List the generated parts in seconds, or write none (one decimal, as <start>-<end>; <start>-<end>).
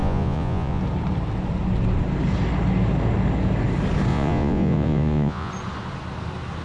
0.0-0.8; 4.1-5.5